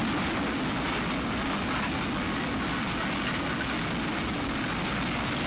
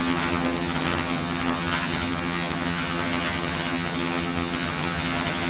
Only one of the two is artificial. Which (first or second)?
second